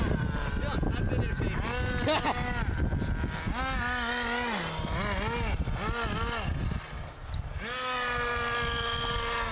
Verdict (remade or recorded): recorded